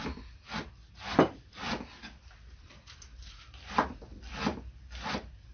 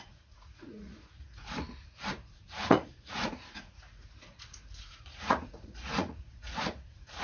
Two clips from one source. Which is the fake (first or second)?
second